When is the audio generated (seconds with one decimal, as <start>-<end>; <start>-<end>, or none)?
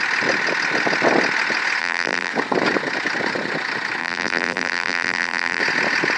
1.8-2.3; 4.0-5.6